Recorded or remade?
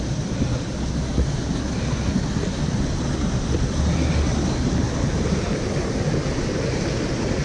recorded